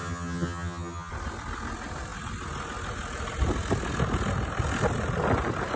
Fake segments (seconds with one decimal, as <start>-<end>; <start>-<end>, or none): 0.0-1.1